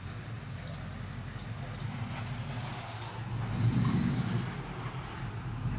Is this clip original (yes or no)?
yes